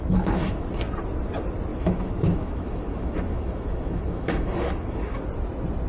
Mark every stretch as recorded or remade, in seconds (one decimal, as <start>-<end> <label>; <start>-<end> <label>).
0.0-0.7 remade; 0.7-1.7 recorded; 1.7-5.2 remade; 5.2-5.9 recorded